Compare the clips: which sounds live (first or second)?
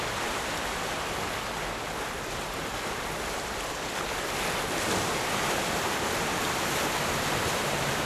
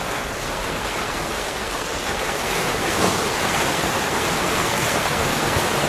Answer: first